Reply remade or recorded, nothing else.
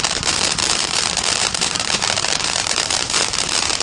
remade